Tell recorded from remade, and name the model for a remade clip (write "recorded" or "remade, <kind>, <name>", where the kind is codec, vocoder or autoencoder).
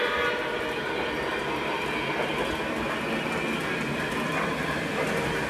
recorded